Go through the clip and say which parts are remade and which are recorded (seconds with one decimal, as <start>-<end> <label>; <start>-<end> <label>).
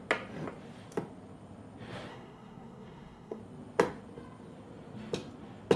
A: 0.0-2.1 recorded; 2.1-3.4 remade; 3.4-5.8 recorded